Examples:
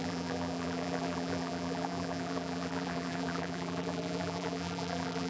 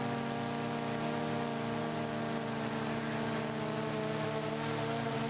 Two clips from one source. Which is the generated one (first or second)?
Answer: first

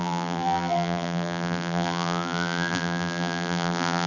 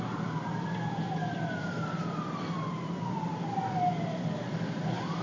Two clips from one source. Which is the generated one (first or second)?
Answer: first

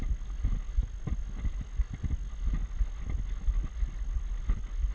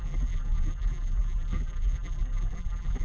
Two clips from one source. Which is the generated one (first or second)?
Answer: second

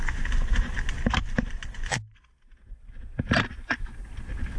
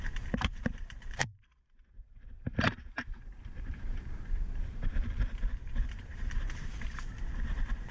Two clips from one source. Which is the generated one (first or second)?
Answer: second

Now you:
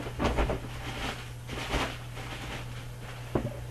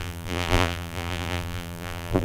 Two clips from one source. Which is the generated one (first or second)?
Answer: second